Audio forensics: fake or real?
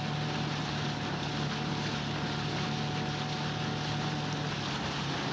real